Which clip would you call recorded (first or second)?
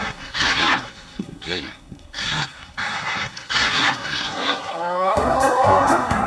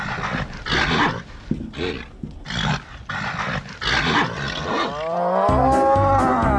second